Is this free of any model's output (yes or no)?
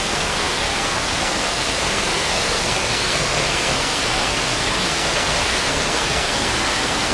no